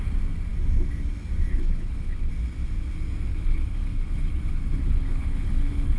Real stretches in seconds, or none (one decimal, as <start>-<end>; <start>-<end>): 0.0-1.5; 2.3-3.3